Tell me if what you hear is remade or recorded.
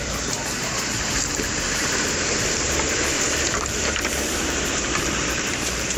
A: remade